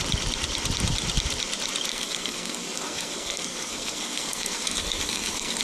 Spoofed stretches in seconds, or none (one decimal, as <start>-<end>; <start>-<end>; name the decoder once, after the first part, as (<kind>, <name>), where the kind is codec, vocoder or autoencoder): 1.9-5.6 (codec, SNAC)